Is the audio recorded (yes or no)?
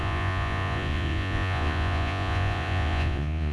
no